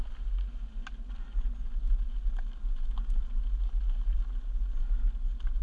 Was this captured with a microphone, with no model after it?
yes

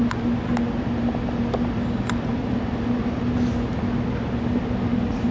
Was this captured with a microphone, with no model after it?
yes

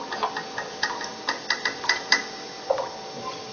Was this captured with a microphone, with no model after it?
yes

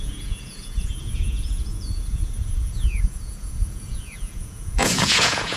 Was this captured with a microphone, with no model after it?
no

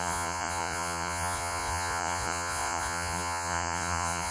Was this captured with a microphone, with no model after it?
no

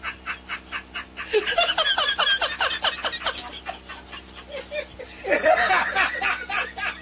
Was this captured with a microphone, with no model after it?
yes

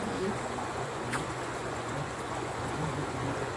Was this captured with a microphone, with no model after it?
no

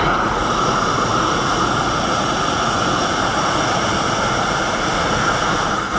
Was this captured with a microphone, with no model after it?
no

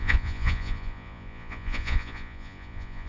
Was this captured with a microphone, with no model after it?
no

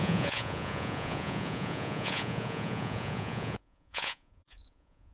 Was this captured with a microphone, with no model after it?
no